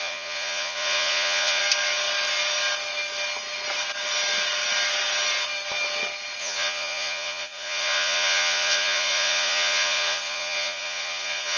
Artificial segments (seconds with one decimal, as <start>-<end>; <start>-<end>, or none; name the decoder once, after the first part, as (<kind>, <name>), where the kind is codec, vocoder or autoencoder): 0.0-1.6 (vocoder, Vocos); 6.4-11.6